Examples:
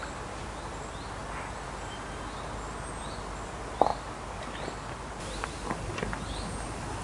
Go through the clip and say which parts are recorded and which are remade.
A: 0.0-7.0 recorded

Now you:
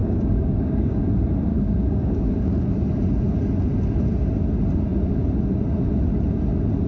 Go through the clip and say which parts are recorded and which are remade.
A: 0.0-1.1 remade; 1.1-1.5 recorded; 1.5-2.3 remade; 2.3-6.9 recorded

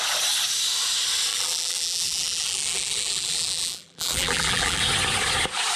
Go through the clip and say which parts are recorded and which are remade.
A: 0.0-1.3 recorded; 1.3-4.8 remade; 4.8-5.8 recorded

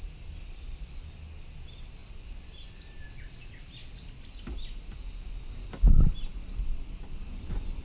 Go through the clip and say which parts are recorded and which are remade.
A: 0.0-0.4 recorded; 0.4-1.0 remade; 1.0-7.8 recorded

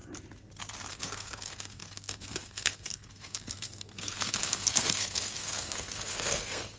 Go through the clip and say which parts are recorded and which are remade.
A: 0.0-0.9 recorded; 0.9-6.8 remade

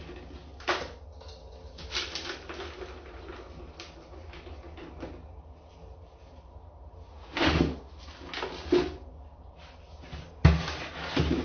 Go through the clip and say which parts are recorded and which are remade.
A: 0.0-7.1 recorded; 7.1-8.0 remade; 8.0-11.4 recorded

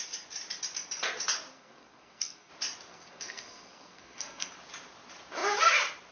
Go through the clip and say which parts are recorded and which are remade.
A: 0.0-1.5 recorded; 1.5-2.5 remade; 2.5-2.9 recorded; 2.9-4.5 remade; 4.5-6.1 recorded